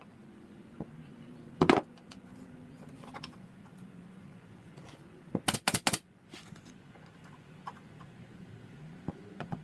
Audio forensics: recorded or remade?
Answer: remade